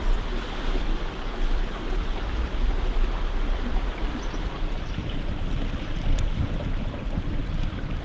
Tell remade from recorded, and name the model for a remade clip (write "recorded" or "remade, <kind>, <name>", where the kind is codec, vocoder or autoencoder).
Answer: remade, vocoder, BigVGAN v2